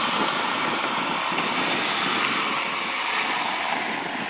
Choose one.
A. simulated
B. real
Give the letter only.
B